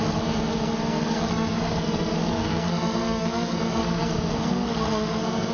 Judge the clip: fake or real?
fake